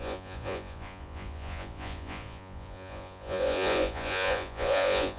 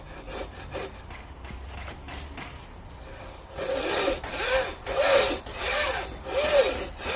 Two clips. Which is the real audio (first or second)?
second